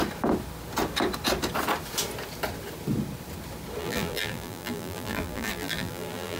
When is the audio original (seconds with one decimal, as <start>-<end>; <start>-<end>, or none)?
0.0-3.8